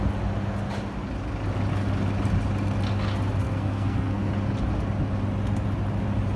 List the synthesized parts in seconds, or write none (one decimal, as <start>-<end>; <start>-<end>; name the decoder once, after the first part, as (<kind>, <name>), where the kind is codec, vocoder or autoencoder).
3.4-4.3 (codec, SNAC)